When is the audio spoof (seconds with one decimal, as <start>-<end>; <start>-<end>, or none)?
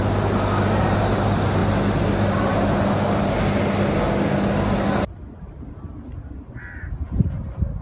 none